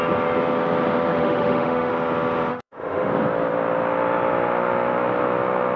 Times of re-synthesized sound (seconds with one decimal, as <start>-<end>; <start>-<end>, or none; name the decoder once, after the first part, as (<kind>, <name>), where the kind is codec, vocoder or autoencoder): 1.1-1.9 (autoencoder, DAC-VAE); 2.5-3.1